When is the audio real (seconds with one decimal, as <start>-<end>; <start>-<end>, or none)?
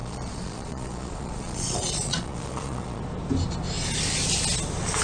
3.0-5.0